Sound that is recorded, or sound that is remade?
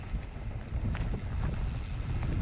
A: recorded